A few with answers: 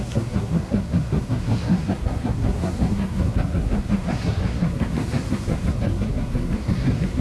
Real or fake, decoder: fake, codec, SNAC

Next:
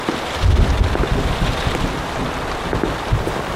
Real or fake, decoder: real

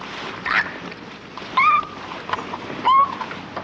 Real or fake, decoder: real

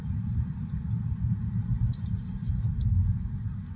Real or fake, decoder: real